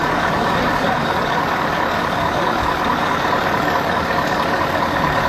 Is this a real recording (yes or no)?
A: no